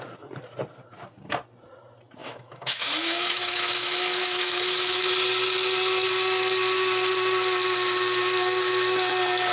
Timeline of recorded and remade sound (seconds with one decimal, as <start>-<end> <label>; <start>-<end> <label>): 0.0-2.2 recorded; 2.2-5.1 remade; 5.1-9.5 recorded